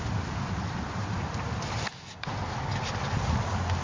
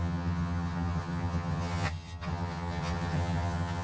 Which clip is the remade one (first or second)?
second